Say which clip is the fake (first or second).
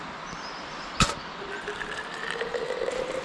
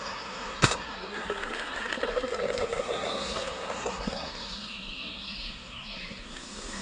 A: second